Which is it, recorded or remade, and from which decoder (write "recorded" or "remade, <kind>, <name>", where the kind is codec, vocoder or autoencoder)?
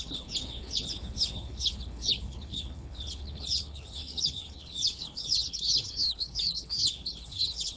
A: remade, codec, HILCodec